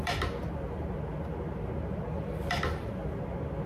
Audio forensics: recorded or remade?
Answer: recorded